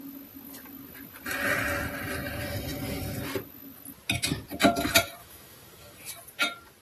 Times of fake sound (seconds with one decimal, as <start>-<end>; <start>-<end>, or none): 5.2-6.1